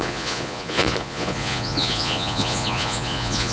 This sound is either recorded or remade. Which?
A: remade